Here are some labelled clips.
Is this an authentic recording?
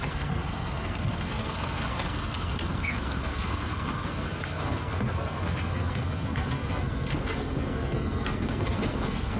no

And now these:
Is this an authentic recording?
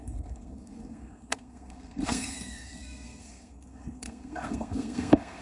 no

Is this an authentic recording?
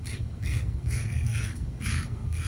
no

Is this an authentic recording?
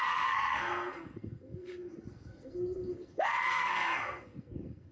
no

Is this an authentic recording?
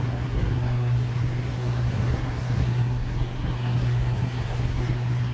no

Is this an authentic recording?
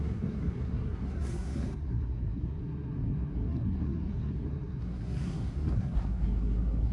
no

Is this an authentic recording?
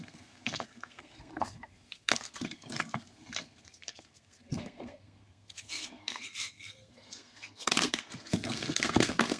no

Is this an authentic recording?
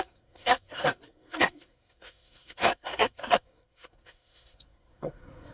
no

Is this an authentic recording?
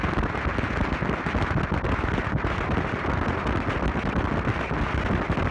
yes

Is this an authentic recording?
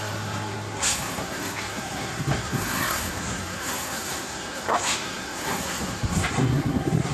no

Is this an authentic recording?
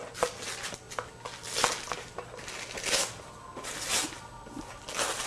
yes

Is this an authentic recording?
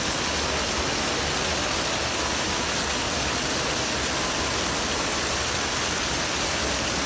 yes